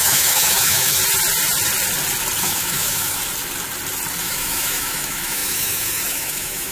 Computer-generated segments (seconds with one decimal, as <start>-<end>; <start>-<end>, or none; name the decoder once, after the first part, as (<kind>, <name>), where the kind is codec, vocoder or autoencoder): 0.0-1.0 (autoencoder, DAC-VAE); 2.4-3.2; 4.2-6.7